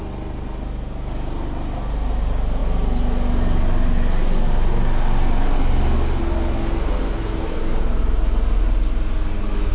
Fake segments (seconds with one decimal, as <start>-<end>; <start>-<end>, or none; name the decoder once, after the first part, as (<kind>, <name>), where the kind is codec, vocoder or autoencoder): none